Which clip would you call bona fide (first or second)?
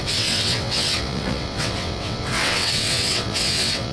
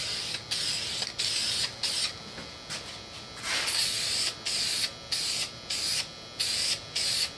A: second